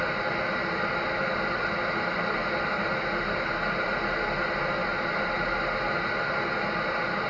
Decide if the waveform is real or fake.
real